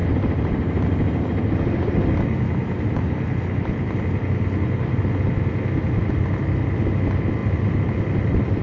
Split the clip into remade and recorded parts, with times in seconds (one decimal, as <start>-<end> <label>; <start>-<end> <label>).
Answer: 0.0-7.4 recorded; 7.4-8.6 remade